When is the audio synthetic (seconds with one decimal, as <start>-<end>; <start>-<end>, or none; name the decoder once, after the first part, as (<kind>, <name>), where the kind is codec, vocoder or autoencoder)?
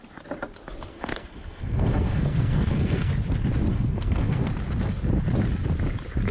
0.9-3.1 (codec, SNAC); 3.7-4.5